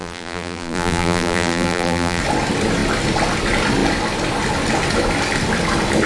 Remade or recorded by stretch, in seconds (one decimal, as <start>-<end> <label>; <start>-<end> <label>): 0.0-2.2 remade; 2.2-6.1 recorded